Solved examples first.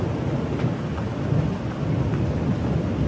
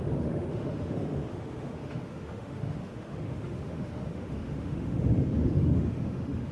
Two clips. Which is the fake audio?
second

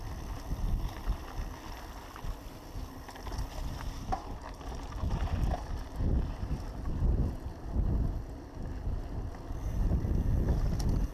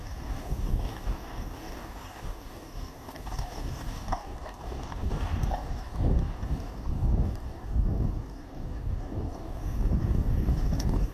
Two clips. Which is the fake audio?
second